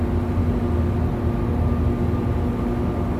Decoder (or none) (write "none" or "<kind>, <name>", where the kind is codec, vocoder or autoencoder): none